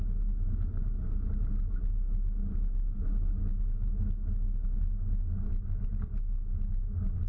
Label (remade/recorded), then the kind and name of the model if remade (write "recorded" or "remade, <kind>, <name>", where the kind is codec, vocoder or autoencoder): recorded